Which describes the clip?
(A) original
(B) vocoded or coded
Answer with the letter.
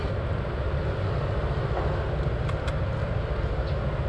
A